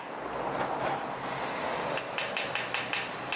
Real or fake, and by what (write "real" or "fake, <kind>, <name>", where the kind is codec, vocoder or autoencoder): real